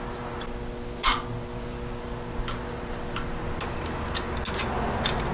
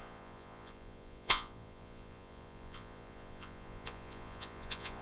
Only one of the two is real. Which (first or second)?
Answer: first